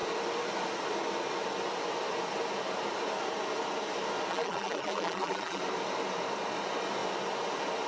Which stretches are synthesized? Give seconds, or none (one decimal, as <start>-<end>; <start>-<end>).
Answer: 4.3-5.6